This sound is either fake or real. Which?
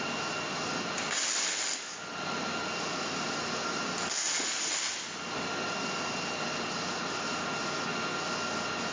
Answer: real